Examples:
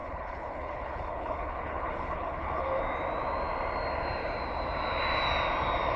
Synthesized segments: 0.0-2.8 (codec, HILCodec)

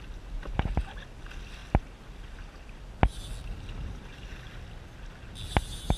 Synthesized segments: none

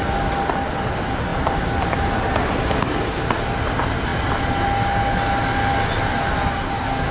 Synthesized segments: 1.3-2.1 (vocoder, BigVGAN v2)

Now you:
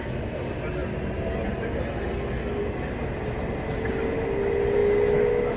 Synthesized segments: none

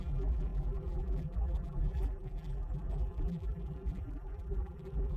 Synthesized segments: 0.0-5.2 (vocoder, BigVGAN v2)